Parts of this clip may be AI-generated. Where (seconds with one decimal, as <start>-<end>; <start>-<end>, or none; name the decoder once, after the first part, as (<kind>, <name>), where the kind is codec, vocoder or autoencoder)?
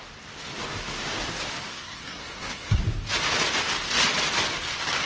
1.7-2.8 (codec, SNAC)